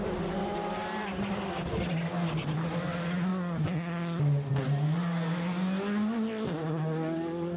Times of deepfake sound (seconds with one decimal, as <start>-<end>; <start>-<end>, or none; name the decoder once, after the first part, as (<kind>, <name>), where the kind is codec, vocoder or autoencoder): none